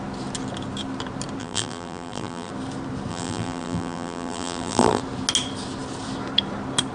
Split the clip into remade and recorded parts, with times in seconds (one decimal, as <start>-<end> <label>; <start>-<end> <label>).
0.0-1.4 recorded; 1.4-2.5 remade; 2.5-3.1 recorded; 3.1-5.0 remade; 5.0-6.9 recorded

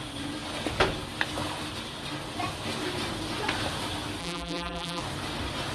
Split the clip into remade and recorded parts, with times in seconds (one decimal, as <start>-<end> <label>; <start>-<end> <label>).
0.0-4.2 recorded; 4.2-5.0 remade; 5.0-5.7 recorded

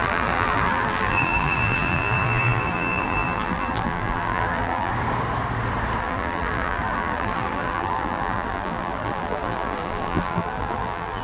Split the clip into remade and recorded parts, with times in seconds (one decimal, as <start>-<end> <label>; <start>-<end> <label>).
0.0-4.9 remade; 4.9-6.0 recorded; 6.0-11.2 remade